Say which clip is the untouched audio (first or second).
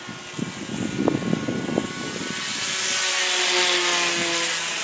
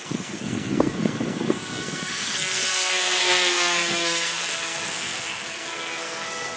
first